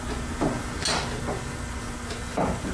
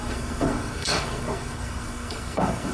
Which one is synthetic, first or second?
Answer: second